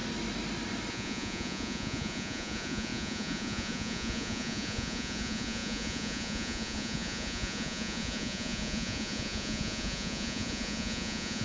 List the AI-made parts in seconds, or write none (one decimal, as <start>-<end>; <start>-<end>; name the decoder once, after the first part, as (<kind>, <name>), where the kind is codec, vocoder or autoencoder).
0.9-11.4 (vocoder, Vocos)